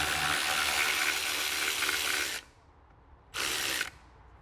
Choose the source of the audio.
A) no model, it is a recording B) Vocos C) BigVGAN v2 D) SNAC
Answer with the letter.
A